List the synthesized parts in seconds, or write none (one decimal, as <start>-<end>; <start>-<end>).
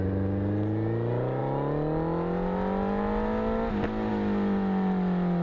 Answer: none